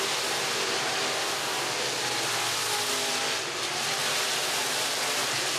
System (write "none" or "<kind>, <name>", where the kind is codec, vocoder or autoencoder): none